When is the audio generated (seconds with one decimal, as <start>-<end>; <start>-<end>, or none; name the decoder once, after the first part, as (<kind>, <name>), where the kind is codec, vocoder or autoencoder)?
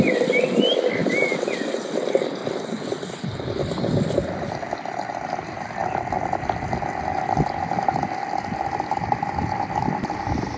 1.0-1.6 (vocoder, BigVGAN v2); 2.4-2.9